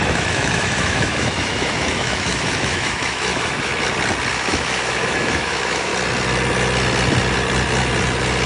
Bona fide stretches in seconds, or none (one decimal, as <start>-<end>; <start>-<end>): 3.7-4.3; 5.9-8.5